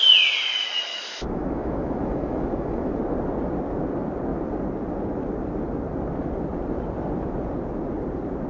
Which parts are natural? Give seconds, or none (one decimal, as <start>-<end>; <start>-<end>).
0.0-0.9; 3.0-8.5